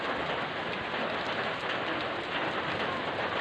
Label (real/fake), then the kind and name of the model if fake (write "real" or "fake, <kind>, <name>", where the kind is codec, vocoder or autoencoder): real